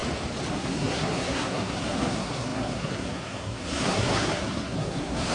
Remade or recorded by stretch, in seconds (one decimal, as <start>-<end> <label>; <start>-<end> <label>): 0.0-0.5 recorded; 0.5-5.3 remade